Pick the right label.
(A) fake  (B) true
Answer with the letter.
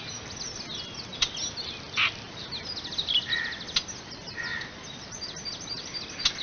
B